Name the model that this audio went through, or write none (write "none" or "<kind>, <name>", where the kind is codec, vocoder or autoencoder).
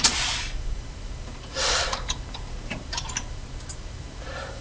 vocoder, BigVGAN v2